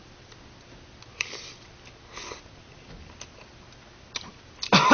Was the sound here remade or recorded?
recorded